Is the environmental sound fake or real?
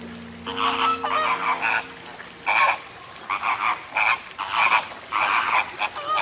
real